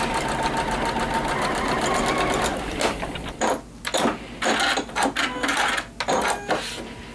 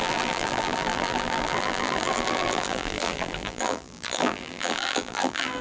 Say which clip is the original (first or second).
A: first